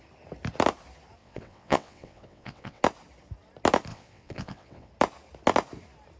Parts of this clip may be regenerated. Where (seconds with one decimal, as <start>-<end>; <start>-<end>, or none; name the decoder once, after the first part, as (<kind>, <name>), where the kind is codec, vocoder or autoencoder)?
1.2-2.8 (vocoder, WaveNeXt); 3.9-4.9